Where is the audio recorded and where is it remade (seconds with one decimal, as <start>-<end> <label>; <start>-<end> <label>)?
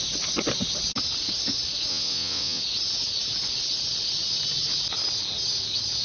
0.0-1.9 recorded; 1.9-2.6 remade; 2.6-6.0 recorded